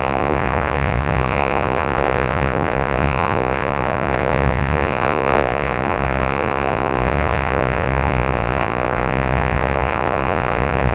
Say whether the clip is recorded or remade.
remade